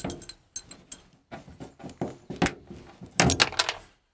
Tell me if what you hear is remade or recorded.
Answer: recorded